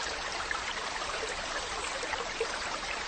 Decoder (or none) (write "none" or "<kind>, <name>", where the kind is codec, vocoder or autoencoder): vocoder, BigVGAN v2